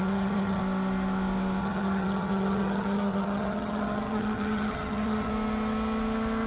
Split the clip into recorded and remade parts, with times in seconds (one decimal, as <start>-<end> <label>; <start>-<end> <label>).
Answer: 0.0-0.6 remade; 0.6-1.6 recorded; 1.6-5.3 remade; 5.3-6.5 recorded